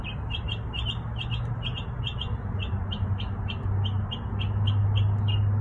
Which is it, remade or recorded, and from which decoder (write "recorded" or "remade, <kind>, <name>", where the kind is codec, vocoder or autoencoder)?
recorded